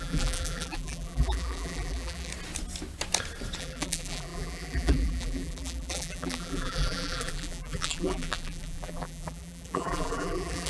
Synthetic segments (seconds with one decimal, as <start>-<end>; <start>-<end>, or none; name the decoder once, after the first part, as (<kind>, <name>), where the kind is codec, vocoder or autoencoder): 0.0-2.3 (vocoder, BigVGAN v2); 3.6-10.7

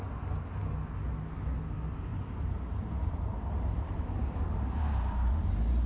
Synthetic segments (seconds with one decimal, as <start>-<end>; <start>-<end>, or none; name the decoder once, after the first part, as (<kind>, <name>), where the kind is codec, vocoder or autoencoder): 2.1-5.3 (vocoder, BigVGAN v2)